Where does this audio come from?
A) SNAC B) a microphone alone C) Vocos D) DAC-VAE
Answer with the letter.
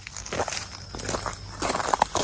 B